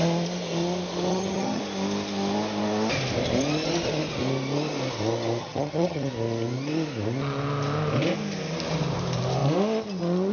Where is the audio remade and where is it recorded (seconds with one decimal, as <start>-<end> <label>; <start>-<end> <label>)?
0.0-1.1 recorded; 1.1-1.6 remade; 1.6-5.4 recorded; 5.4-6.1 remade; 6.1-10.3 recorded